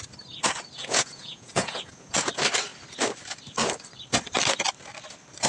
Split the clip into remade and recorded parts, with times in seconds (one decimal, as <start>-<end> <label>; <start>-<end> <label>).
0.0-0.8 recorded; 0.8-2.3 remade; 2.3-5.5 recorded